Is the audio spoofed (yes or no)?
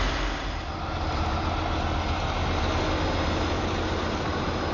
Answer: no